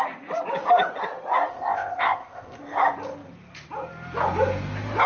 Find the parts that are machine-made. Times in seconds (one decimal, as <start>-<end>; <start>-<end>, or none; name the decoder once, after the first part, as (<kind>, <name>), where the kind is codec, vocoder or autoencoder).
1.5-2.6 (codec, ZipCodec)